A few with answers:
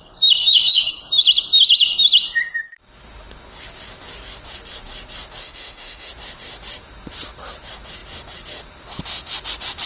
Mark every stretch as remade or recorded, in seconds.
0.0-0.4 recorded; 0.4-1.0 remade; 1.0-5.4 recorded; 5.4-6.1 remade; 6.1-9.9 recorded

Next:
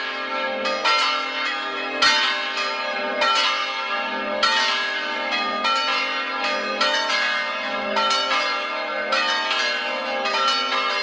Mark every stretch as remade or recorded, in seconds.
0.0-11.0 recorded

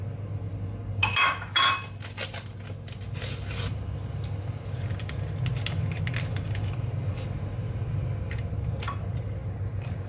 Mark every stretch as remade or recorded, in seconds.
0.0-1.0 recorded; 1.0-1.6 remade; 1.6-10.1 recorded

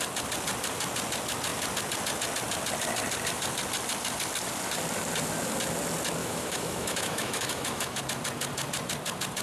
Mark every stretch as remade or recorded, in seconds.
0.0-6.2 recorded; 6.2-8.0 remade; 8.0-9.4 recorded

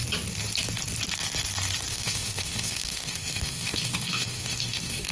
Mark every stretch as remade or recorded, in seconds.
0.0-1.9 recorded; 1.9-5.1 remade

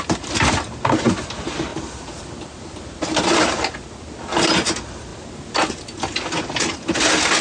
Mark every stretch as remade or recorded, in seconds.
0.0-1.7 recorded; 1.7-3.7 remade; 3.7-7.4 recorded

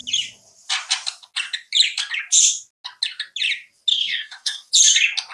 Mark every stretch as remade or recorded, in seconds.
0.0-3.9 recorded; 3.9-4.7 remade; 4.7-5.3 recorded

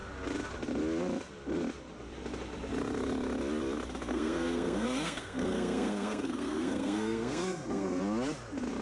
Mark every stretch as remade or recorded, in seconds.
0.0-4.1 recorded; 4.1-8.0 remade; 8.0-8.8 recorded